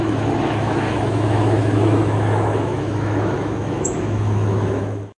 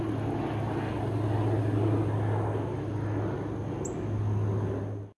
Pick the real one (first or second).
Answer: second